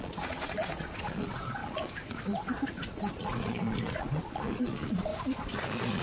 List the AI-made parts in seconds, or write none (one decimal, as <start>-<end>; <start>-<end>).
0.0-6.0